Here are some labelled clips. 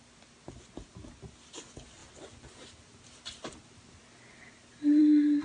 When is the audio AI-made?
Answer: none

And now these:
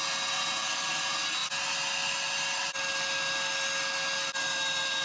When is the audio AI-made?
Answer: none

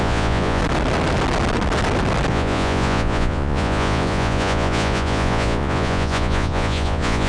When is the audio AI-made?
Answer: 0.0-0.6 (vocoder, Vocos); 2.3-7.3

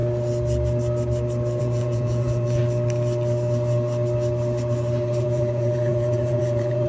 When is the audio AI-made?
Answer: 1.6-2.6 (vocoder, Vocos); 5.2-6.9

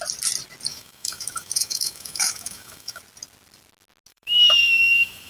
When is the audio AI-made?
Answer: 0.7-3.0 (autoencoder, DAC-VAE); 4.1-5.3